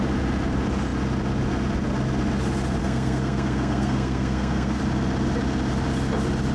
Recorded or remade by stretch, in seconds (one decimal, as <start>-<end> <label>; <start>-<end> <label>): 0.0-2.8 recorded; 2.8-4.8 remade; 4.8-6.5 recorded